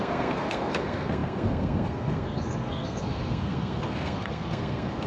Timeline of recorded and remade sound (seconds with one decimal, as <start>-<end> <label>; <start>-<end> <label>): 0.0-5.1 remade